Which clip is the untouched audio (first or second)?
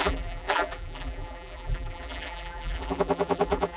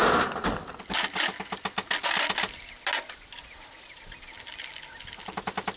second